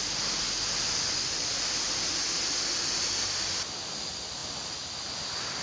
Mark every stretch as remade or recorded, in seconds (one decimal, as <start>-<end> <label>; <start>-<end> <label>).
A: 0.0-5.6 recorded